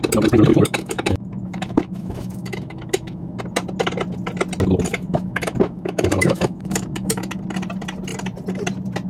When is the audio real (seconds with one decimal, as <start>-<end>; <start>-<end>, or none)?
0.0-0.5; 3.4-4.9; 7.4-9.1